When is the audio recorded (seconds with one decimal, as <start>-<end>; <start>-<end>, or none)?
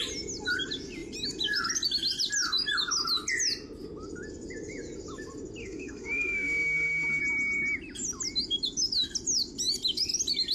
0.0-5.6; 7.2-10.5